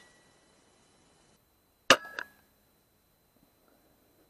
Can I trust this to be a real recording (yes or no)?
yes